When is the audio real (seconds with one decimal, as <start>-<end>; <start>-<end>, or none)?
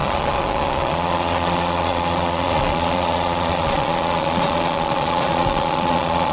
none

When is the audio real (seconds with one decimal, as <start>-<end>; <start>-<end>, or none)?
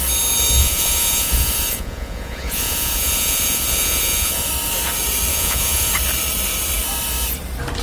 0.0-0.6; 4.5-5.3; 5.9-7.8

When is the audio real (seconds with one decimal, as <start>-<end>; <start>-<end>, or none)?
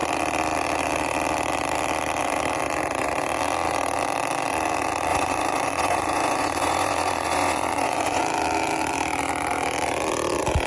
0.0-5.1; 8.2-10.7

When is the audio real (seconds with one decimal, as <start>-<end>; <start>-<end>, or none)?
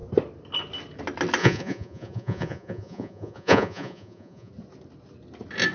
0.0-1.4; 4.5-5.7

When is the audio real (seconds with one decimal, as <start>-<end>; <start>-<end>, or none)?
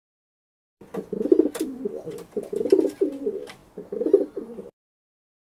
0.0-5.5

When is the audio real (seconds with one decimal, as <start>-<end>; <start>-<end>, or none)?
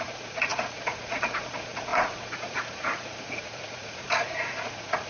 none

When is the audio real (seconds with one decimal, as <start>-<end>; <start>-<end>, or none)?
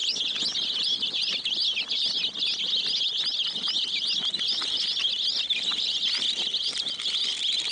0.0-7.7